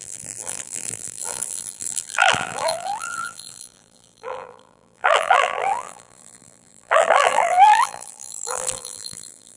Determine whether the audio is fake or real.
fake